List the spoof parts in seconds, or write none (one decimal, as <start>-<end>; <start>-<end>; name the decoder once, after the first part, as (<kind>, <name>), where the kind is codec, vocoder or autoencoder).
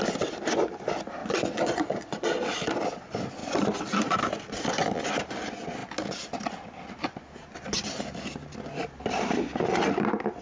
1.2-2.7 (vocoder, Vocos)